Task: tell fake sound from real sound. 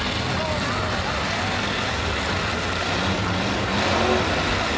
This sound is real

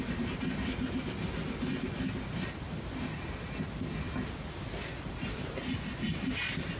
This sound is real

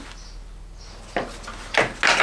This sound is real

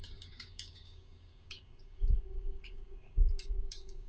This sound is fake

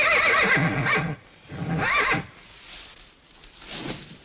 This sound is real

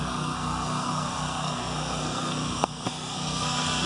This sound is fake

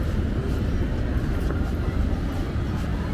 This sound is real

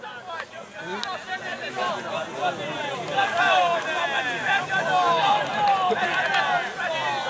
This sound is real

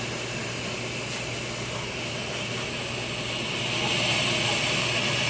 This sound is real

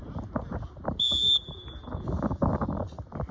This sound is real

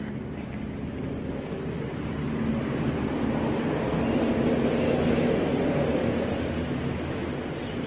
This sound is real